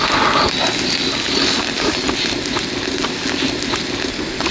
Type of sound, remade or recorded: recorded